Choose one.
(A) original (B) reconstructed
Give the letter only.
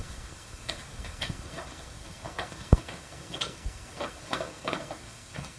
B